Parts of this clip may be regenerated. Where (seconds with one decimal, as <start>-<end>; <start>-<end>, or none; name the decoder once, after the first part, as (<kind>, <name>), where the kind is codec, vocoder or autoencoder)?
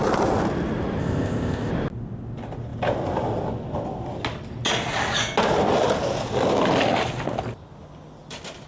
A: 1.0-1.7 (codec, ZipCodec)